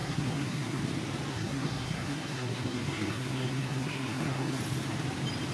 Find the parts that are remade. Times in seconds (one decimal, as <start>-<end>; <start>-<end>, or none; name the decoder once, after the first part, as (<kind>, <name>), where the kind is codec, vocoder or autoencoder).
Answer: 0.0-0.8 (codec, SNAC); 1.3-4.6